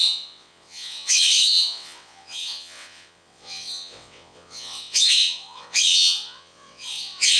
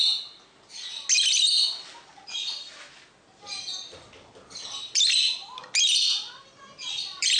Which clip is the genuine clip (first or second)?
second